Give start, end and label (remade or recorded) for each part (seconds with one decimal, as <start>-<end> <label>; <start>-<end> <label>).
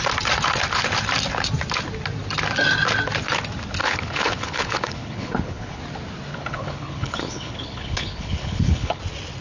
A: 0.0-3.8 recorded; 3.8-5.8 remade; 5.8-6.3 recorded; 6.3-9.0 remade; 9.0-9.4 recorded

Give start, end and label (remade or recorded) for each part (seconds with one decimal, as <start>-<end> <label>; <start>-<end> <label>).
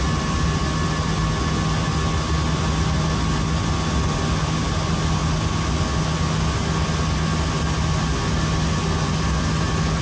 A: 0.0-10.0 recorded